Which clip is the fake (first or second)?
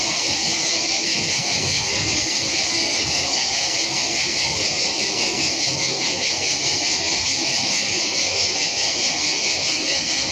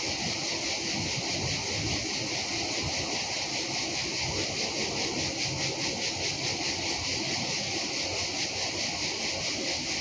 first